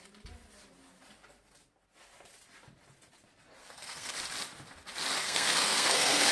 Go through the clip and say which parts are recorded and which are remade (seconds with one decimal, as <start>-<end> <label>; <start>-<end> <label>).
0.0-3.6 recorded; 3.6-4.1 remade; 4.1-5.2 recorded; 5.2-6.3 remade